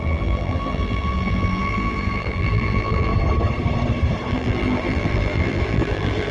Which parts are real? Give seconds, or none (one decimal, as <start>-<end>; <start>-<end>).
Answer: 3.1-4.3